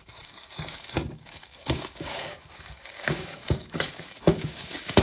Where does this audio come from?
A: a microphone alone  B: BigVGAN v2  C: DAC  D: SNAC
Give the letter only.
C